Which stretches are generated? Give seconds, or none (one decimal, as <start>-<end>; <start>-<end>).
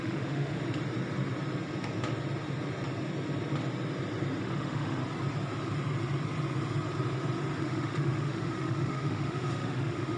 0.0-0.6; 4.4-5.0; 7.6-10.2